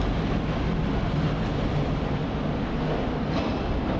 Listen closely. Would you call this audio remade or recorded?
recorded